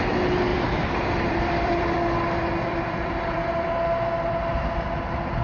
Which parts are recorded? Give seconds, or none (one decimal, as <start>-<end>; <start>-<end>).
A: 0.0-0.5; 2.0-2.7; 3.5-5.4